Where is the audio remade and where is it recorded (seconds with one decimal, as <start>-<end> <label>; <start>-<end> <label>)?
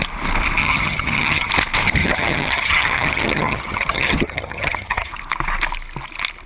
0.0-0.6 recorded; 0.6-1.5 remade; 1.5-2.0 recorded; 2.0-5.1 remade; 5.1-6.5 recorded